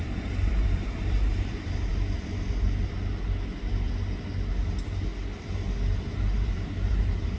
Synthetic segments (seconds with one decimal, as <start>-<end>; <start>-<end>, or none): 0.0-1.9; 5.9-7.4